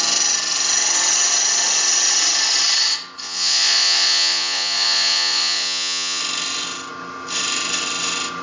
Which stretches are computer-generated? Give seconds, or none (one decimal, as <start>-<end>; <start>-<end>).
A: 3.2-6.2